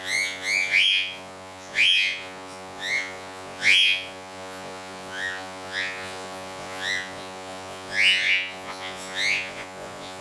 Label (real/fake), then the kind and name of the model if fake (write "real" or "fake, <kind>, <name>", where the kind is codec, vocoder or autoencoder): fake, vocoder, Vocos